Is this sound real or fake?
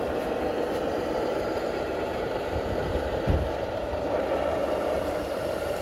fake